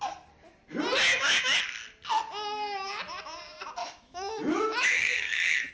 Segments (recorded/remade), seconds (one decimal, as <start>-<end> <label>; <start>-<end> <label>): 0.0-1.1 recorded; 1.1-1.6 remade; 1.6-3.8 recorded; 3.8-5.7 remade